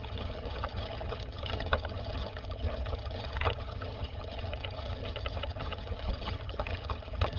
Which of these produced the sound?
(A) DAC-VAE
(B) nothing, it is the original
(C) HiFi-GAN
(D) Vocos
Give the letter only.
C